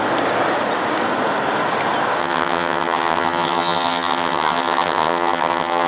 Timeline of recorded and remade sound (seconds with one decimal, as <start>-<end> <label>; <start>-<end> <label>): 0.0-2.2 recorded; 2.2-5.9 remade